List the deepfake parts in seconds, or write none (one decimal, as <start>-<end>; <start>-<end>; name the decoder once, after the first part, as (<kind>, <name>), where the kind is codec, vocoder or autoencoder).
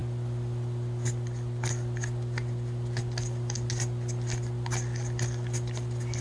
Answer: none